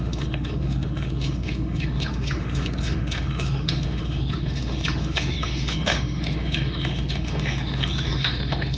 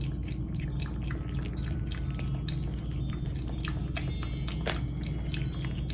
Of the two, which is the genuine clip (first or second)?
second